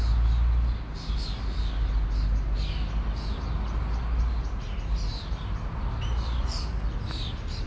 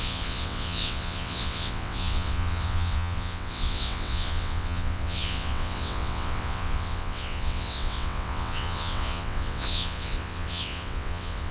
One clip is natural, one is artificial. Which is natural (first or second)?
first